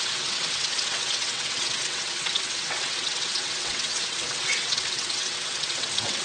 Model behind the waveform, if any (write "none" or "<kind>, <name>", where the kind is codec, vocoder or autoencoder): vocoder, WaveNeXt